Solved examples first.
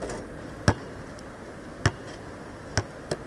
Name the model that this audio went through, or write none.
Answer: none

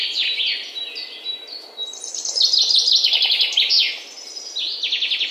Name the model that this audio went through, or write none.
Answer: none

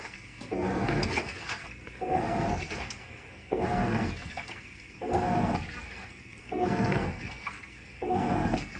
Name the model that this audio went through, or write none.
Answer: codec, SNAC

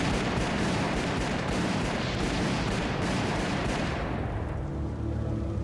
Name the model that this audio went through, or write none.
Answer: vocoder, BigVGAN v2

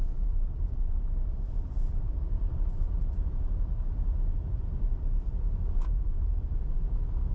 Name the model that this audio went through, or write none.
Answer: vocoder, BigVGAN v2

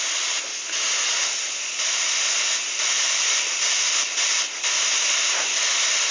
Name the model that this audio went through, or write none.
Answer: none